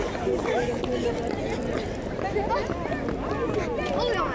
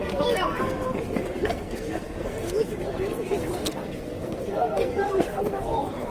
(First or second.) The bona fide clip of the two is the first